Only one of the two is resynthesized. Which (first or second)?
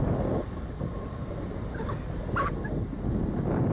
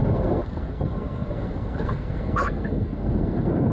second